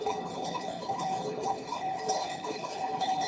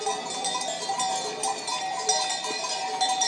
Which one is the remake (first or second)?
first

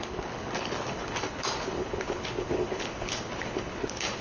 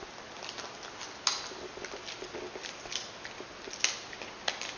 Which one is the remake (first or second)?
first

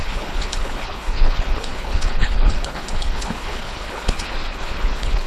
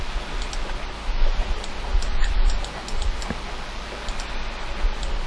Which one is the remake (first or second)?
first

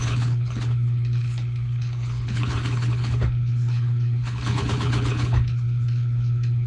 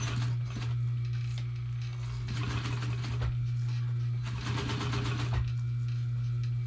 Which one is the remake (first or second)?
first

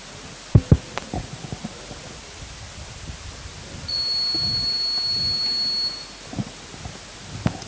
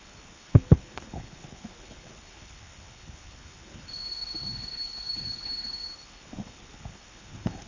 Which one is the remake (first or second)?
second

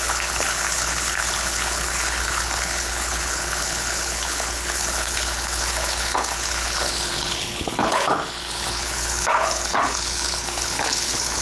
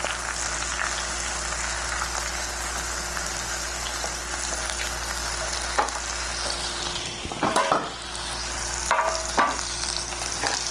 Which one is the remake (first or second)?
first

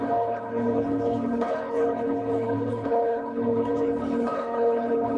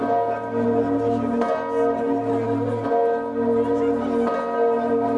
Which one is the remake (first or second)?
first